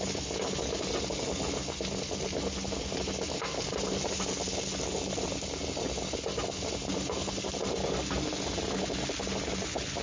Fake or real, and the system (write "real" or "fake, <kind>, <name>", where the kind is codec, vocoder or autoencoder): real